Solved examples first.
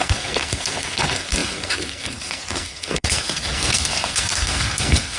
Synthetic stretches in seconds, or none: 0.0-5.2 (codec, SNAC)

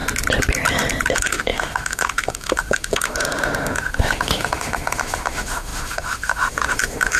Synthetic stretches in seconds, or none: 1.1-7.2 (autoencoder, DAC-VAE)

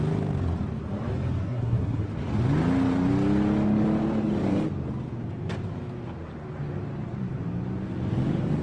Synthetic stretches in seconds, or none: 1.4-2.0 (codec, SNAC)

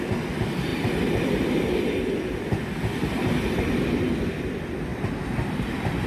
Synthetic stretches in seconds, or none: none

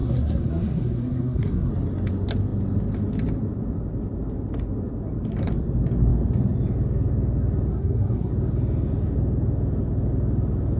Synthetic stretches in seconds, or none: 0.0-1.7 (codec, SNAC); 7.7-8.3

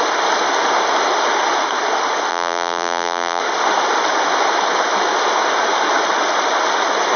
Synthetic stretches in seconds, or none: 2.3-3.4 (vocoder, BigVGAN v2)

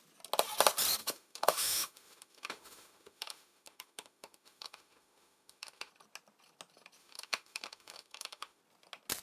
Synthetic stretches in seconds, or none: 1.0-5.9 (autoencoder, DAC-VAE); 7.0-8.6